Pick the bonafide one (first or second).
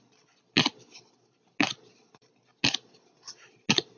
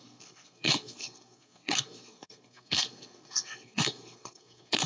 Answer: first